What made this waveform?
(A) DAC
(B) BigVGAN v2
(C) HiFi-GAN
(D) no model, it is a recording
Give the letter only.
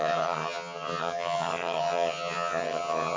C